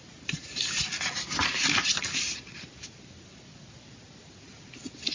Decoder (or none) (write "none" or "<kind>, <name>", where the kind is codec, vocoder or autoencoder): none